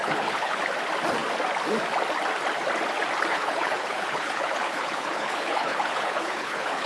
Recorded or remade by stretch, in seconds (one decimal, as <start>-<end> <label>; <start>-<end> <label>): 0.0-0.6 remade; 0.6-3.3 recorded; 3.3-6.9 remade